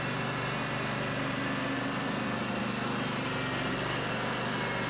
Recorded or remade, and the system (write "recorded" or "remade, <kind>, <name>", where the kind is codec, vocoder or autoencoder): recorded